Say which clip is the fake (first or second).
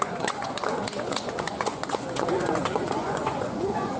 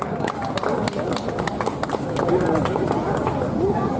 first